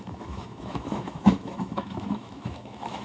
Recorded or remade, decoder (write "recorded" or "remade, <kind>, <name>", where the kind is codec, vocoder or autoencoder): remade, autoencoder, DAC-VAE